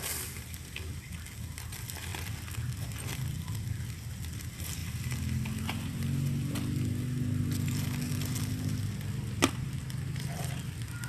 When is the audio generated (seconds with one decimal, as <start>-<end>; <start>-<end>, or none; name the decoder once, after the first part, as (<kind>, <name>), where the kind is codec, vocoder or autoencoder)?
none